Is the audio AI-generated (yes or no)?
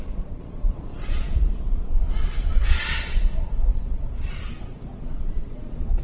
yes